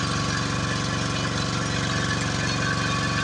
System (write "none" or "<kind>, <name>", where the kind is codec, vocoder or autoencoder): none